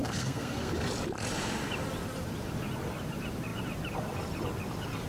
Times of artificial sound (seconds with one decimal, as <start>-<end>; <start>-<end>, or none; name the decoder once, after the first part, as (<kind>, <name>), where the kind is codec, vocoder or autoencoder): 0.0-0.7 (codec, SNAC)

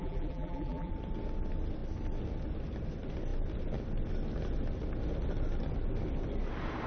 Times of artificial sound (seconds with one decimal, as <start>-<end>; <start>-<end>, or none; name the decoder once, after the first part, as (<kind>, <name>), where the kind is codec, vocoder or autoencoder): 0.0-0.9 (vocoder, BigVGAN v2)

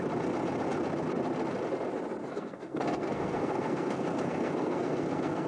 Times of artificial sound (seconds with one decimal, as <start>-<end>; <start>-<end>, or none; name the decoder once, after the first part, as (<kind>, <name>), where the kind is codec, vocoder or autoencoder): 2.2-5.5 (codec, SNAC)

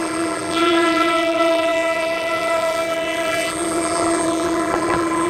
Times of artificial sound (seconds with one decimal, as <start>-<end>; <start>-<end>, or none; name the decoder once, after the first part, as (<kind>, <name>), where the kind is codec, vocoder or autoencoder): 0.0-5.3 (vocoder, BigVGAN v2)

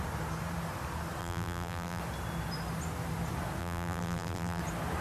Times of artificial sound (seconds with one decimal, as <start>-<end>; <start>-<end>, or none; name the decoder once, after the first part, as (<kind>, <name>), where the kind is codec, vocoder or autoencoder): 1.2-2.0 (vocoder, BigVGAN v2); 3.6-4.6

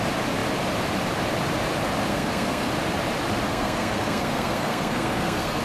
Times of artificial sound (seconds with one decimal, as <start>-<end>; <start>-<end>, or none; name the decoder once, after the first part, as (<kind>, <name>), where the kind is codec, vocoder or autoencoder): 2.1-2.7 (codec, SNAC); 3.5-5.6

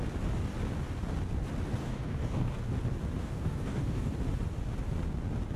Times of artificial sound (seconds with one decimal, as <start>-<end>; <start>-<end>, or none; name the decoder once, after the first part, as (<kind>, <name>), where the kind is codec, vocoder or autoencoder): 1.8-2.7 (codec, DAC); 3.2-4.1